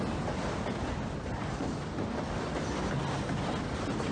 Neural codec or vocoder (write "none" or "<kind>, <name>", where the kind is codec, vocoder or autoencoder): none